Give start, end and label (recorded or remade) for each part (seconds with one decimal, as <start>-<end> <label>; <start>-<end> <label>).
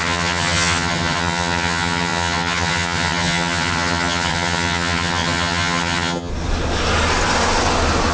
0.0-6.3 remade; 6.3-8.1 recorded